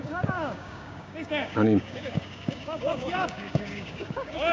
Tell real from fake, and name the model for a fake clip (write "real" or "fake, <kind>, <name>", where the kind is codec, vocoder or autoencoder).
fake, codec, DAC